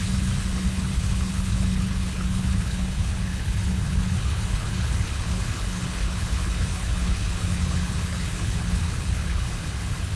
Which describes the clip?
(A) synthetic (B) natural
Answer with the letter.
A